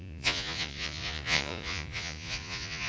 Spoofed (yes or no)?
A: yes